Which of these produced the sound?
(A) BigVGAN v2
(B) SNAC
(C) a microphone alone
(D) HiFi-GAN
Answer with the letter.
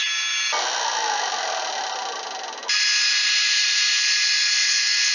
C